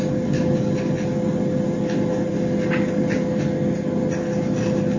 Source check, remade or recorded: recorded